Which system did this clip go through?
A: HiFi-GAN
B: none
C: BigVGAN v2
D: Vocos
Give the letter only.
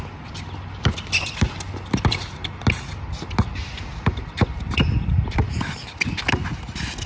B